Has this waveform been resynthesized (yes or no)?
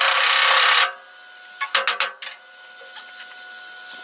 no